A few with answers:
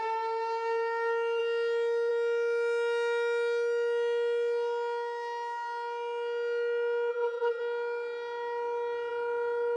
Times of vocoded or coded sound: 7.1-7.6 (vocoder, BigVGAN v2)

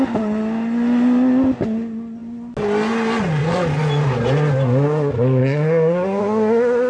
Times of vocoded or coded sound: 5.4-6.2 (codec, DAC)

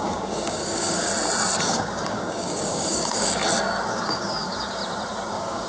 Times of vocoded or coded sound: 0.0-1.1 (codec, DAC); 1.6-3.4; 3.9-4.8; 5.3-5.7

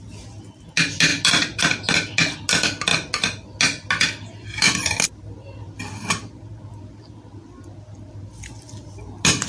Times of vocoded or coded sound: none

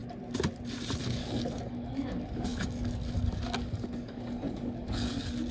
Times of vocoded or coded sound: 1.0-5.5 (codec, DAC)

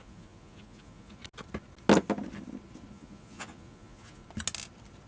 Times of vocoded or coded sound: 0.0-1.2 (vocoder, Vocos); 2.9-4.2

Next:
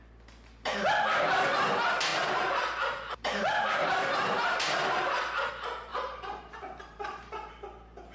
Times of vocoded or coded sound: 2.1-5.5 (vocoder, BigVGAN v2); 5.9-7.5